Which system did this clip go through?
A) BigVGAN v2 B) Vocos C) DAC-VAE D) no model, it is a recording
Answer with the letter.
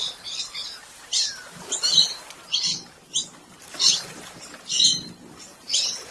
A